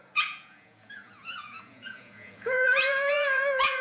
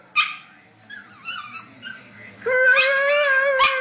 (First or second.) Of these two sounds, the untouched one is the second